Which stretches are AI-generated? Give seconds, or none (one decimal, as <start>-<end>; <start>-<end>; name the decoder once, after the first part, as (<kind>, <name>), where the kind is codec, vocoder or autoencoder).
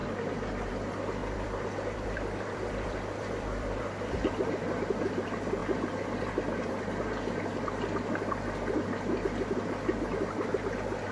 1.2-3.8 (vocoder, BigVGAN v2)